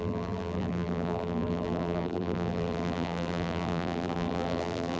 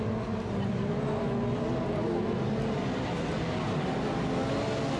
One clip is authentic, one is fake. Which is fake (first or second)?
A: first